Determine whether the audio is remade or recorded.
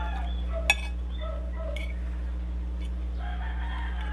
recorded